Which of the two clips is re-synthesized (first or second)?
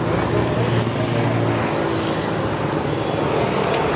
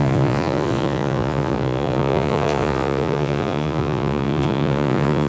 second